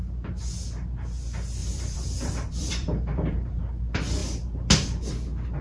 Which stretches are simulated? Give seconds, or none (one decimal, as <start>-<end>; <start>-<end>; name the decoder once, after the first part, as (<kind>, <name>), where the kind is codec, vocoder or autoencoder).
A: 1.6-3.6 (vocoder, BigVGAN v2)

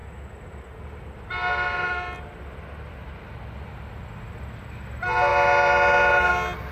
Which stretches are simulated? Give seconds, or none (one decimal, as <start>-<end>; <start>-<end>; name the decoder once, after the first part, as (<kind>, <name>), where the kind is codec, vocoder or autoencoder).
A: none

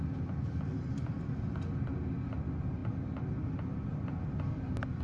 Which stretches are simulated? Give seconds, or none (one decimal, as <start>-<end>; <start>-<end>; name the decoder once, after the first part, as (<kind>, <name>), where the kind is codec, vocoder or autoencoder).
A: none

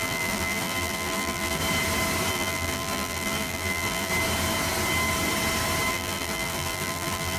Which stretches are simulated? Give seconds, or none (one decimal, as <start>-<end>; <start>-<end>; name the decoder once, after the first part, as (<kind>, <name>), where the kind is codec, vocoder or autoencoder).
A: 0.0-1.6 (vocoder, BigVGAN v2); 2.3-4.1; 5.9-7.4

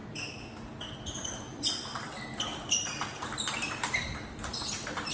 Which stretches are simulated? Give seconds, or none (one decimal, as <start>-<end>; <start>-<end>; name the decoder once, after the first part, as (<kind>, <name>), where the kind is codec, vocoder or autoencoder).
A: 1.1-5.1 (vocoder, BigVGAN v2)

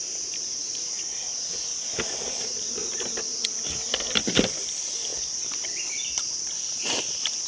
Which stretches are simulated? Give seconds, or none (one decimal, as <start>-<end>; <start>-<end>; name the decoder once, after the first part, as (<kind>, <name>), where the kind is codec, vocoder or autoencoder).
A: 0.0-0.6 (vocoder, BigVGAN v2); 2.1-2.8; 4.5-7.5